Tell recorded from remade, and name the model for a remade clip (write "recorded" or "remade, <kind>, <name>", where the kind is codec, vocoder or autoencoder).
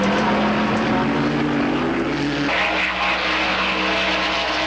recorded